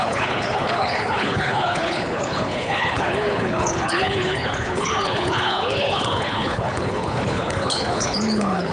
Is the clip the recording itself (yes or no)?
no